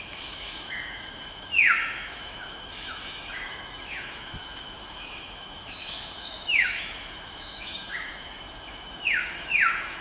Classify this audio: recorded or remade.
remade